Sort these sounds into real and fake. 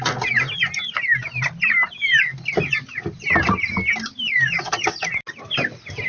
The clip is real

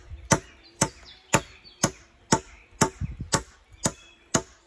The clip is real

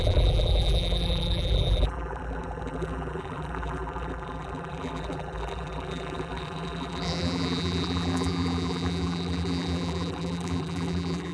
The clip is fake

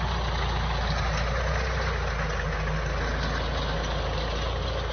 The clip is real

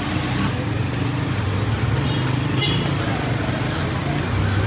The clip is real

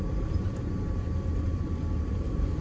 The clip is fake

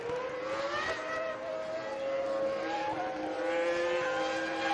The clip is real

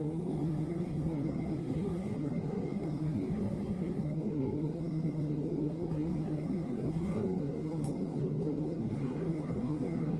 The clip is fake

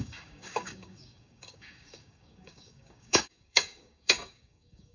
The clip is fake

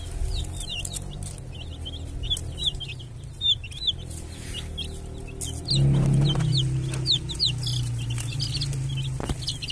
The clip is real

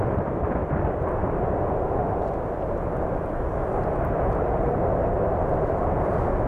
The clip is real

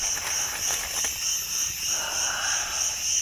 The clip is real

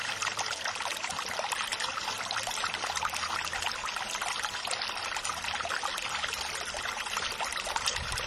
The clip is real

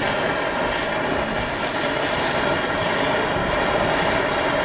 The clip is real